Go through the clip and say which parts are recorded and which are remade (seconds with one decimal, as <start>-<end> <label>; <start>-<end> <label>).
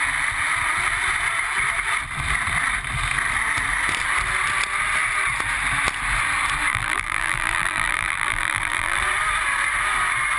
0.0-6.7 recorded; 6.7-9.0 remade; 9.0-10.4 recorded